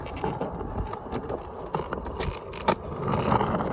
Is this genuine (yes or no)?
yes